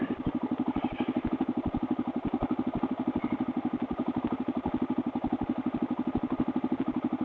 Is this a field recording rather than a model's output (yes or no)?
yes